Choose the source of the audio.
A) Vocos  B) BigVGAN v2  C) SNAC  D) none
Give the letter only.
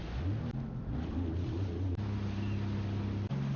D